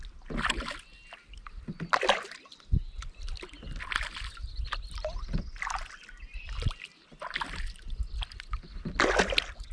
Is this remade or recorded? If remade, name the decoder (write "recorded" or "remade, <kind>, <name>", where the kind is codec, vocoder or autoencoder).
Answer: recorded